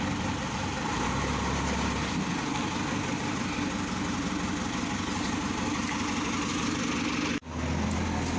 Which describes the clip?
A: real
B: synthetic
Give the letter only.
A